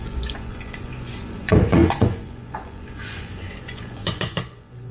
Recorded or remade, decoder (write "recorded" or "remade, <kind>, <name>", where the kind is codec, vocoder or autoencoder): remade, vocoder, Vocos